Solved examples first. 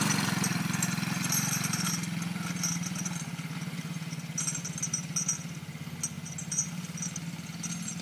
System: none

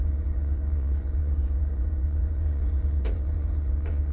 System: vocoder, Vocos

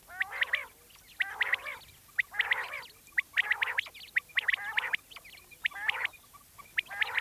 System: none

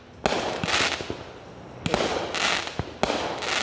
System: none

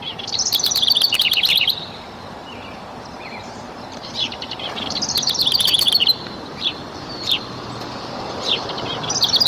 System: vocoder, BigVGAN v2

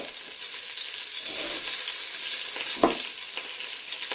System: none